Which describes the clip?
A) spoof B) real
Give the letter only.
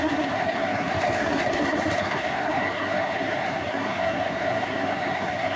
A